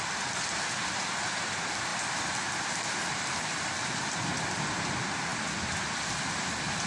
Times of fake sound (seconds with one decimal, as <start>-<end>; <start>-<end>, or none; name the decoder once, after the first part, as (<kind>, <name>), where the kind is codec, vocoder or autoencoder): 1.9-3.7 (vocoder, BigVGAN v2)